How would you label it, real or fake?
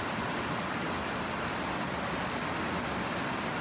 real